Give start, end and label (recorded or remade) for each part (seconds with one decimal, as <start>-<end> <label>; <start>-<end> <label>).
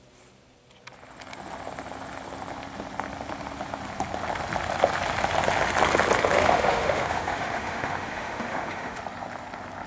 0.0-6.3 recorded; 6.3-9.0 remade; 9.0-9.9 recorded